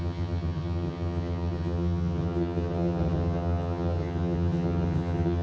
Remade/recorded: remade